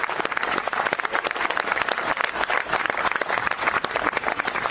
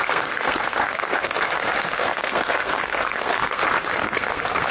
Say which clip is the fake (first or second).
second